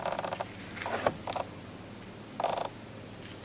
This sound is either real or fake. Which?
real